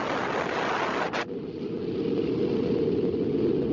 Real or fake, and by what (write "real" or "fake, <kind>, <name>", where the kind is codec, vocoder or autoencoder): real